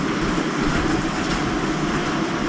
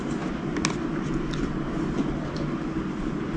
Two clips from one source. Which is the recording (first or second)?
second